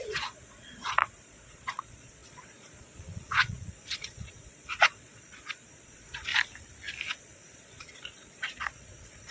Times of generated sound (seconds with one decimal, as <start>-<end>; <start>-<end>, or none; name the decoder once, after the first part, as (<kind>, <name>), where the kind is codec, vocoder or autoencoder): 0.0-6.3 (vocoder, Vocos); 7.2-9.3